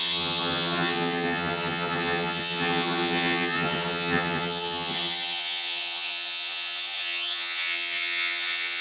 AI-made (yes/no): yes